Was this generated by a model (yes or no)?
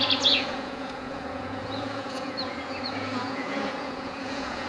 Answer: yes